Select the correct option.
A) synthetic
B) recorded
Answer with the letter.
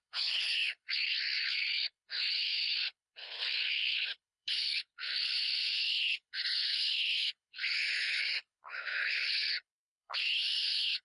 A